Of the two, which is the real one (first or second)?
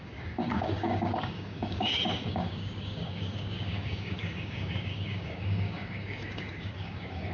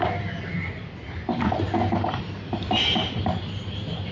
second